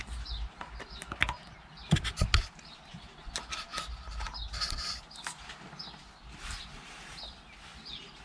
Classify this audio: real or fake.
real